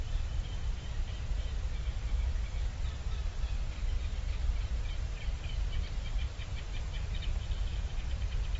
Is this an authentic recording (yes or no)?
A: no